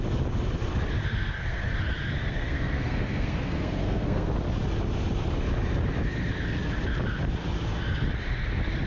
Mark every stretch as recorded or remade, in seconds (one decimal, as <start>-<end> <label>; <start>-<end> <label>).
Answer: 0.0-1.0 recorded; 1.0-1.6 remade; 1.6-2.2 recorded; 2.2-4.3 remade; 4.3-8.9 recorded